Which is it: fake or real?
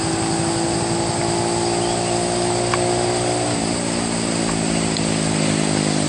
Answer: real